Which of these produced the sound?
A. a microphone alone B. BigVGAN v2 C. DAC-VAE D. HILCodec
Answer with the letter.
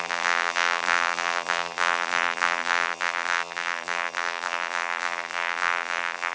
B